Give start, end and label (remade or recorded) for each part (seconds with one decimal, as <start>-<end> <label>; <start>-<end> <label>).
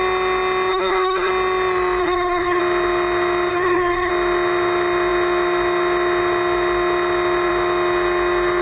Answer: 0.0-0.7 recorded; 0.7-1.3 remade; 1.3-2.0 recorded; 2.0-2.6 remade; 2.6-3.5 recorded; 3.5-4.1 remade; 4.1-8.6 recorded